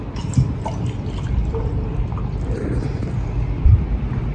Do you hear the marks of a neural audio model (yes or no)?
no